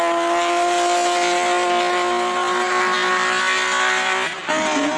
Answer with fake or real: real